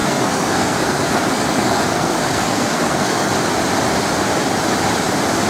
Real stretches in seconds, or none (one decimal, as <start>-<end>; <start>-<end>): 3.3-5.5